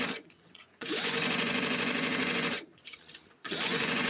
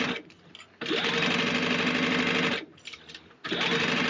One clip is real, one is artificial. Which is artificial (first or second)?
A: first